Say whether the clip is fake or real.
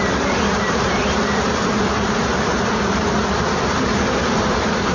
fake